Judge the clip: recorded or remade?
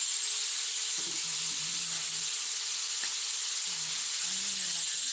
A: recorded